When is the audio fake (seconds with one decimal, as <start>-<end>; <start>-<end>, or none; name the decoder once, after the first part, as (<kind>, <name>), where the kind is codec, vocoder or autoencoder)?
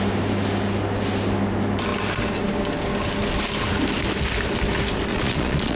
5.1-5.8 (vocoder, Vocos)